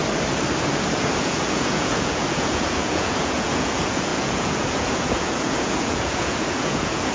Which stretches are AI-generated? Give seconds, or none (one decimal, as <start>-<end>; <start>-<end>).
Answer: 0.7-7.1